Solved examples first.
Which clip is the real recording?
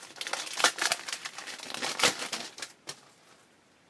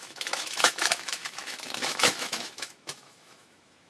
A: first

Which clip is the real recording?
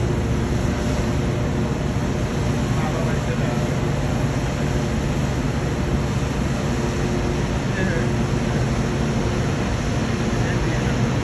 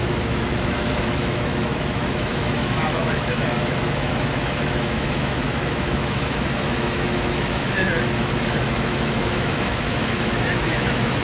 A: first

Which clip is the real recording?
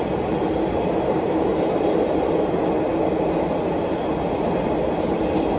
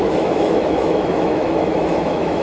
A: first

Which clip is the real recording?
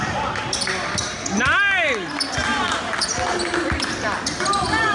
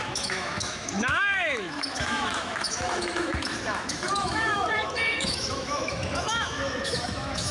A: first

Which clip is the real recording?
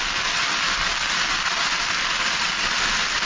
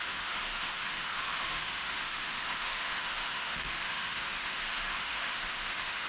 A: first